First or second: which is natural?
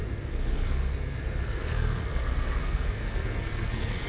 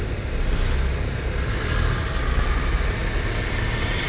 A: second